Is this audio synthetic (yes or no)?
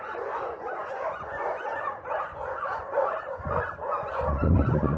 yes